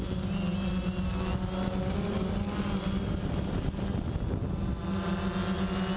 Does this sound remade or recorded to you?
recorded